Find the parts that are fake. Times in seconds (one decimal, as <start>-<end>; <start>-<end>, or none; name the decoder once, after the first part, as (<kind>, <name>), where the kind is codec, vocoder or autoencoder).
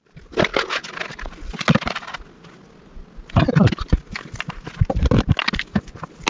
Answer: none